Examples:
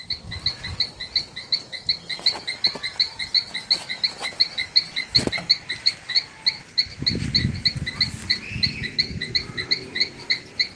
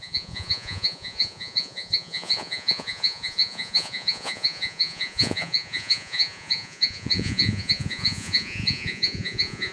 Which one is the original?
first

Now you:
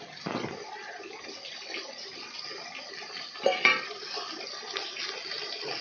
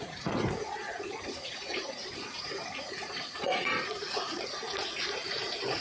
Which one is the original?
first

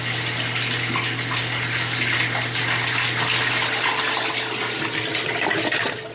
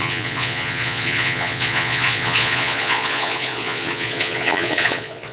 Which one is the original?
first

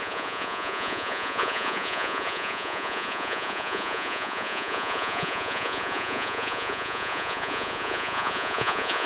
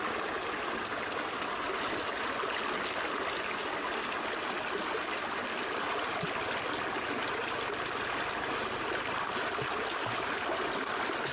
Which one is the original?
second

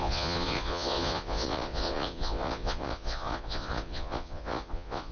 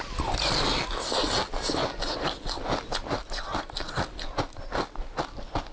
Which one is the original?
second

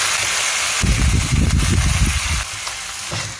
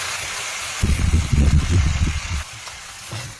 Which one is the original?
first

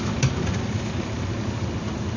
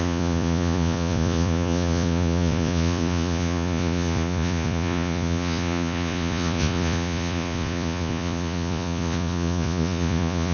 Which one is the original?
first